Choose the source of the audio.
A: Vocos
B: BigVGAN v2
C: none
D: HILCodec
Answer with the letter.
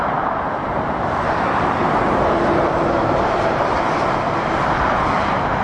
B